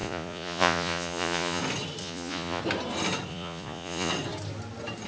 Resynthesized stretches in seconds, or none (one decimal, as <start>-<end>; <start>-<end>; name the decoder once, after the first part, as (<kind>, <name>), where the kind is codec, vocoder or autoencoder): 0.0-1.6 (vocoder, Vocos); 2.0-2.6; 3.3-4.1